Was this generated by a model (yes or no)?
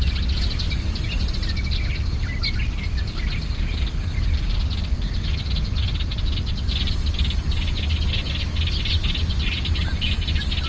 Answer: no